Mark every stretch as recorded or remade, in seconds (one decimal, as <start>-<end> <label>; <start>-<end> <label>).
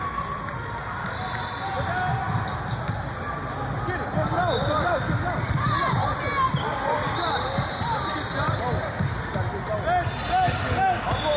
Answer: 0.0-4.3 recorded; 4.3-9.6 remade; 9.6-11.4 recorded